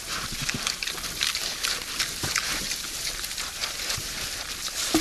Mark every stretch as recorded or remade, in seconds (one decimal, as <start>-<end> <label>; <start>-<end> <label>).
0.0-5.0 remade